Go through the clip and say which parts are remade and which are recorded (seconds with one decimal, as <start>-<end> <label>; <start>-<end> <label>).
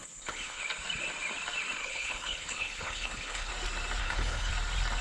0.0-0.6 remade; 0.6-1.8 recorded; 1.8-3.5 remade; 3.5-4.0 recorded; 4.0-4.5 remade; 4.5-5.0 recorded